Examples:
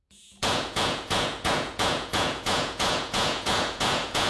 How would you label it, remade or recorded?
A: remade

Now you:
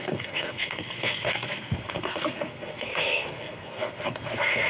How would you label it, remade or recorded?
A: remade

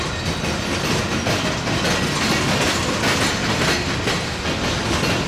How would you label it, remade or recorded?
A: recorded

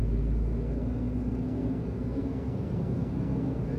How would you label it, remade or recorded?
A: remade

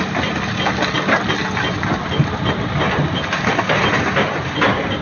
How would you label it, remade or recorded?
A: recorded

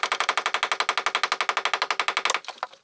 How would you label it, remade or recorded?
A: recorded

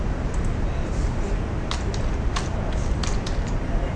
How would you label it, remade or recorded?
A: recorded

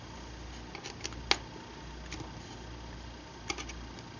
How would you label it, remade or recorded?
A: recorded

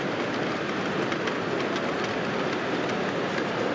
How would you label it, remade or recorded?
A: recorded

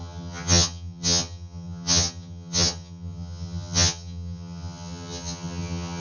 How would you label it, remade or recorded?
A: remade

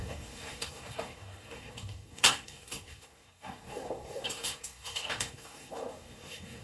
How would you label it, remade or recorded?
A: remade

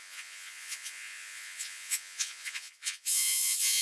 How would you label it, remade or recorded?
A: remade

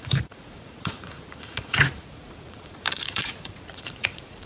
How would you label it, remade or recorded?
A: remade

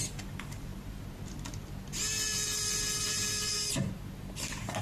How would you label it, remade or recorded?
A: recorded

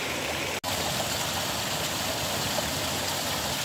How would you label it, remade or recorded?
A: recorded